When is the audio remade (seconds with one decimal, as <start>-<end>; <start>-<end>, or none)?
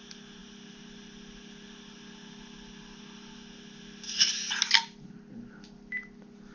none